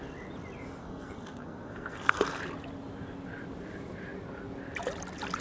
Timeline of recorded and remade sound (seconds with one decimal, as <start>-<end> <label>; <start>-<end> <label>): 0.0-0.8 recorded; 0.8-2.4 remade; 2.4-5.4 recorded